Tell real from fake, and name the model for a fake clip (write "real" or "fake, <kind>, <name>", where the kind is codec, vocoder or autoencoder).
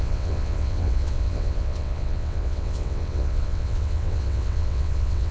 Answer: fake, vocoder, WaveNeXt